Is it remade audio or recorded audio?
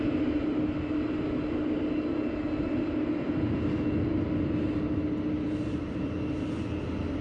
recorded